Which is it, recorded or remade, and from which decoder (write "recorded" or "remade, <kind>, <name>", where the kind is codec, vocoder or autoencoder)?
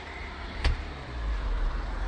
remade, vocoder, BigVGAN v2